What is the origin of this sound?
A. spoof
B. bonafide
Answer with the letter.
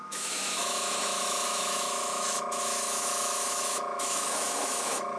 A